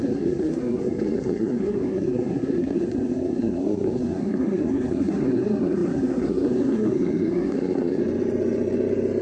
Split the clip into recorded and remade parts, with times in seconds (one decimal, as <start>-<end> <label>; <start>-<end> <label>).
0.0-8.0 remade; 8.0-9.2 recorded